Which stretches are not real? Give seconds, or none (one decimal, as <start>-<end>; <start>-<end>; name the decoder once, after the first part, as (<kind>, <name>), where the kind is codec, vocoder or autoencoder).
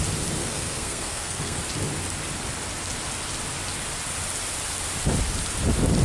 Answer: 0.4-1.6 (codec, SNAC)